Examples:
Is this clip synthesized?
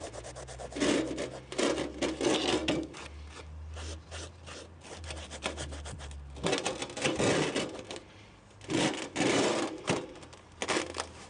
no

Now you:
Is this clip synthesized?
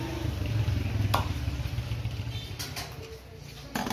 no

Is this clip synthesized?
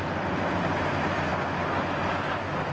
no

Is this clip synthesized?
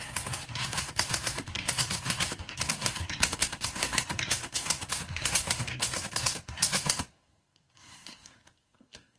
yes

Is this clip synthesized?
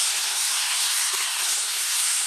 yes